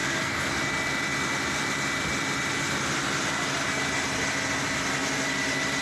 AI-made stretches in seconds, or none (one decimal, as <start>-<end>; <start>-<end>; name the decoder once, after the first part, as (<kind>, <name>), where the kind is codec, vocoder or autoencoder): 0.0-0.6 (codec, SNAC)